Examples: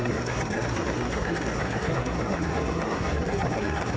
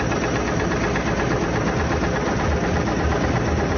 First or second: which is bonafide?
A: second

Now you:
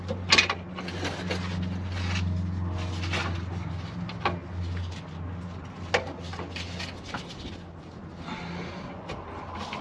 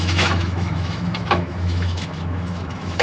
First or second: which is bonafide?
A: first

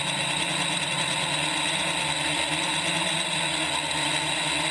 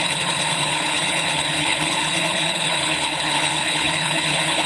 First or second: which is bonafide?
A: first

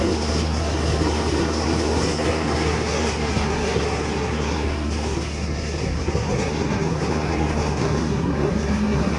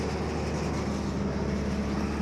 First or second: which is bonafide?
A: second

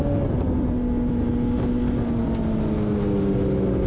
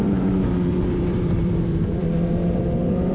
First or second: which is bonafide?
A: first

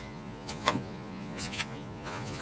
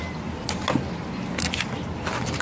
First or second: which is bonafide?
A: second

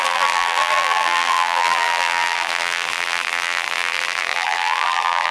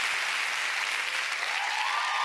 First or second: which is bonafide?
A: second